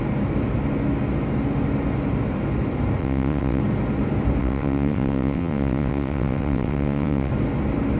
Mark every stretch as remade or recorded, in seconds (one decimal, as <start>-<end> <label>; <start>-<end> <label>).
0.0-3.0 recorded; 3.0-3.6 remade; 3.6-4.4 recorded; 4.4-7.3 remade; 7.3-8.0 recorded